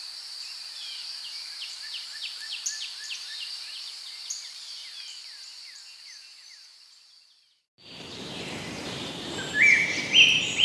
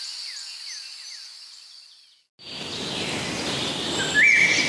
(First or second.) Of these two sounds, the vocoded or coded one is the first